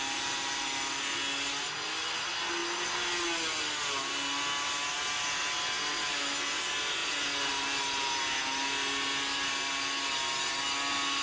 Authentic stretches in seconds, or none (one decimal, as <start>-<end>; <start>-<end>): 0.0-11.2

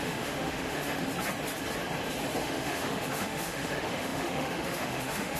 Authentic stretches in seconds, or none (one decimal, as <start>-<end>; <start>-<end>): 1.1-2.4

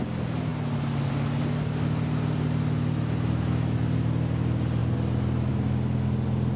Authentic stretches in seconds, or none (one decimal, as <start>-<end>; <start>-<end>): 0.0-6.6